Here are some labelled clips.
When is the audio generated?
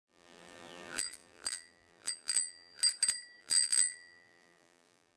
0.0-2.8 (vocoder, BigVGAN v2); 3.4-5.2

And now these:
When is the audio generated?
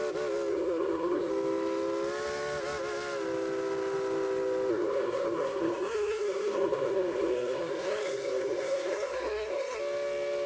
0.5-1.3 (codec, SNAC); 4.7-9.8